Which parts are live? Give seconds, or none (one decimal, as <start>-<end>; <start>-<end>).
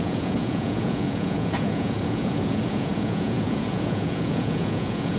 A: none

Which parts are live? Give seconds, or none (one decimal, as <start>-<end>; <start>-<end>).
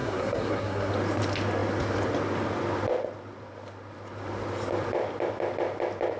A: 0.9-6.2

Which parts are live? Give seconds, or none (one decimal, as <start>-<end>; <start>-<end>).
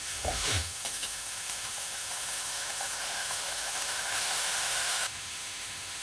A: none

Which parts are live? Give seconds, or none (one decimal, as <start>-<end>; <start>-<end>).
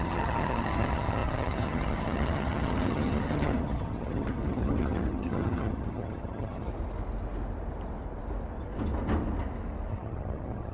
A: 6.7-9.9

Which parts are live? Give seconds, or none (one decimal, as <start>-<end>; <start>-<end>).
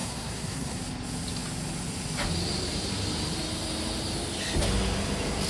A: 0.8-5.5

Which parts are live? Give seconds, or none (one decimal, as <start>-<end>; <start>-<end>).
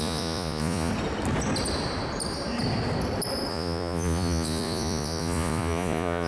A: 0.9-3.5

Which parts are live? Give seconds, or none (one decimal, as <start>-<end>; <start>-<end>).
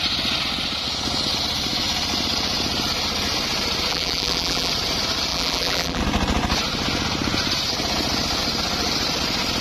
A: 0.0-3.9; 4.7-5.3; 6.0-9.6